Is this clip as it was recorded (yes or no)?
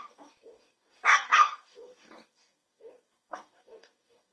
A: no